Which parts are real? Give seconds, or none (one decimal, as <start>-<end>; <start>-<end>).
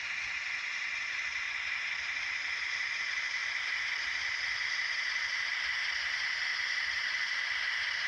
0.0-8.1